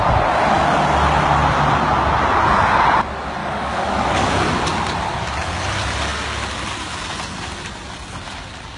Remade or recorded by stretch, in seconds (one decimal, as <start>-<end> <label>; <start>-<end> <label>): 0.0-3.4 recorded; 3.4-4.3 remade; 4.3-8.8 recorded